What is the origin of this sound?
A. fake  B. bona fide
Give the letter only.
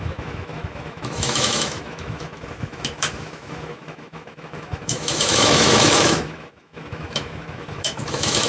A